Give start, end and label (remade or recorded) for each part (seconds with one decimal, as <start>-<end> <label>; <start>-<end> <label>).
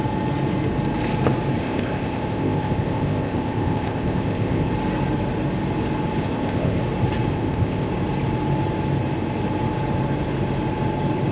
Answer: 0.0-1.6 recorded; 1.6-4.7 remade; 4.7-6.2 recorded; 6.2-6.8 remade; 6.8-7.3 recorded; 7.3-7.9 remade; 7.9-11.3 recorded